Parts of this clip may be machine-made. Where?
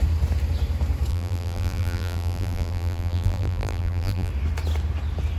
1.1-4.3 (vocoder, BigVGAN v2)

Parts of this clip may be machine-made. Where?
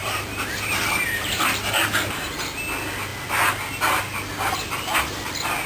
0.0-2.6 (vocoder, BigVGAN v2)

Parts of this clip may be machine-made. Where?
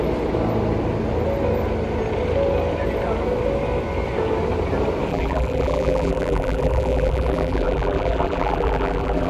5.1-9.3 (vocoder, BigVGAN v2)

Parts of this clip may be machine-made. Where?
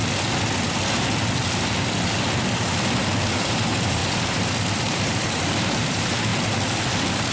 3.5-4.0 (vocoder, BigVGAN v2); 4.8-6.3